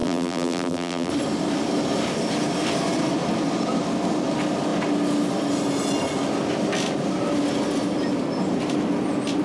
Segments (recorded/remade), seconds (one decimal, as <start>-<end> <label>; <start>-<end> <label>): 0.0-1.1 remade; 1.1-9.4 recorded